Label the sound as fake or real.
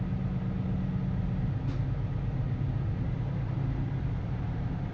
real